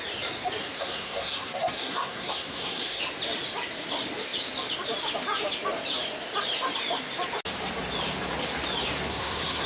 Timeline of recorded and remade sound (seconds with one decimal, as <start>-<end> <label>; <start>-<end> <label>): 0.0-0.6 recorded; 0.6-3.0 remade; 3.0-9.1 recorded; 9.1-9.7 remade

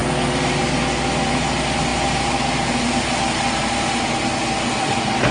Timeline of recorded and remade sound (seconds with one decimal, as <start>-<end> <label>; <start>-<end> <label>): 0.0-5.3 recorded

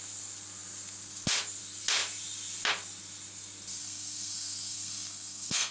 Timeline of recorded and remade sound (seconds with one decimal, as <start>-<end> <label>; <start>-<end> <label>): 0.0-3.8 recorded; 3.8-5.7 remade

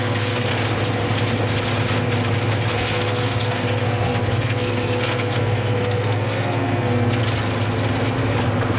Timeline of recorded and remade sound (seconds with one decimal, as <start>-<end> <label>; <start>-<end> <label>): 0.0-0.5 remade; 0.5-2.7 recorded; 2.7-7.2 remade; 7.2-8.8 recorded

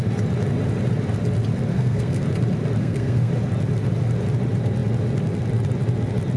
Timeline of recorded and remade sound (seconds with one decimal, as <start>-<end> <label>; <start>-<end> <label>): 0.0-1.7 recorded; 1.7-2.2 remade; 2.2-2.8 recorded; 2.8-3.3 remade; 3.3-6.4 recorded